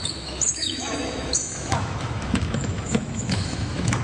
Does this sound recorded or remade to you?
remade